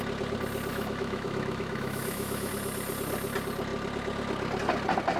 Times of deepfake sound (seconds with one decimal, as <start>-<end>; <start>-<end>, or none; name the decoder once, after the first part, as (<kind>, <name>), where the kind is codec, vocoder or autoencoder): 0.7-2.5 (autoencoder, DAC-VAE)